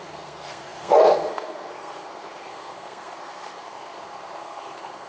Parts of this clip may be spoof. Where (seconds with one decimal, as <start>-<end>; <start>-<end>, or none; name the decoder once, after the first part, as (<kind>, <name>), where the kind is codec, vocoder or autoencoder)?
0.0-5.1 (codec, SNAC)